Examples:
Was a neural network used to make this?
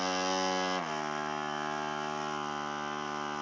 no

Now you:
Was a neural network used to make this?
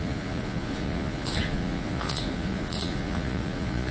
yes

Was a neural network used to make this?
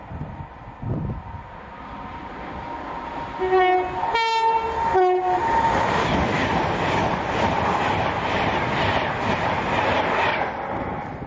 no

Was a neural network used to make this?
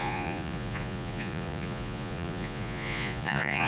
yes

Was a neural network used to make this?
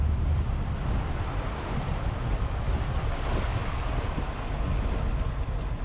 no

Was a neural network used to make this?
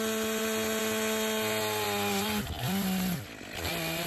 no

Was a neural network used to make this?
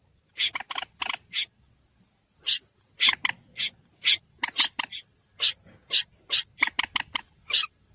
no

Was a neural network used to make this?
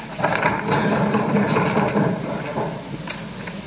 no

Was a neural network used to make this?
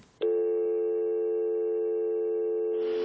no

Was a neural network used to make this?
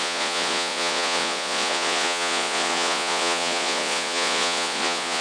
yes